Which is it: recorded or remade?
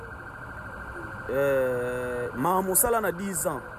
recorded